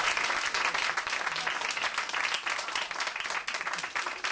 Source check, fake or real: real